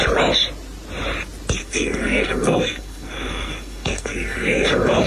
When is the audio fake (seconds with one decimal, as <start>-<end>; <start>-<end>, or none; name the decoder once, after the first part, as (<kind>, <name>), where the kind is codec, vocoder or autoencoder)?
1.6-5.1 (codec, SNAC)